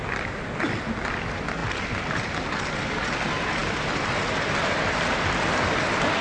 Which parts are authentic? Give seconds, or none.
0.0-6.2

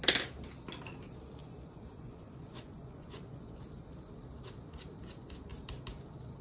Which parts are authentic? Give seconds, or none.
0.0-1.4; 3.6-6.4

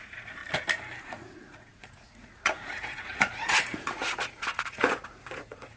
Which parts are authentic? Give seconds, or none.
0.4-1.0

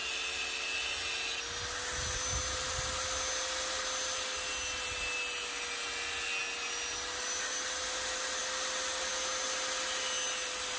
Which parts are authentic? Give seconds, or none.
0.0-10.8

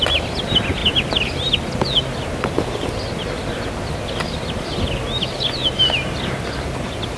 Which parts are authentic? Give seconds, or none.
0.0-7.2

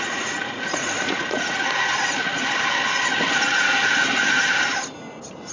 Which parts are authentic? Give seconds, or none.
1.9-5.5

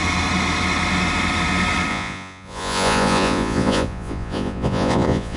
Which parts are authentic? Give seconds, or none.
0.0-1.9